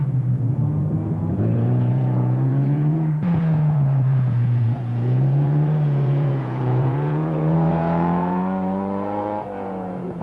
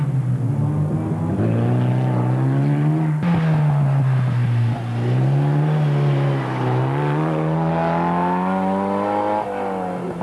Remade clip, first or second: first